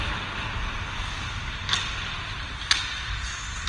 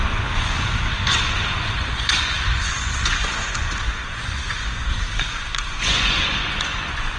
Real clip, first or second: first